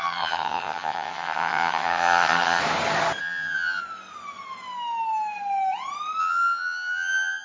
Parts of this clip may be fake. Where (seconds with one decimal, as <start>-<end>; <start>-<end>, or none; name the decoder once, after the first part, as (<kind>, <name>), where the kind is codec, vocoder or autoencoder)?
0.0-2.6 (vocoder, HiFi-GAN); 3.2-3.8; 6.2-7.4